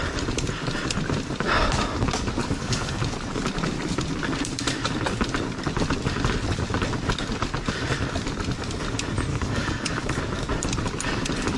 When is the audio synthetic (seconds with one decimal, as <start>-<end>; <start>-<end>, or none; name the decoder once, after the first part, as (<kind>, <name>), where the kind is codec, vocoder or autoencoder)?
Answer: 2.4-3.0 (codec, DAC); 9.3-10.2